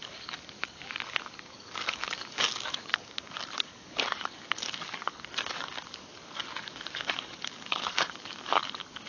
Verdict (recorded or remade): remade